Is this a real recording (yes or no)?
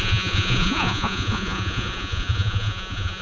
no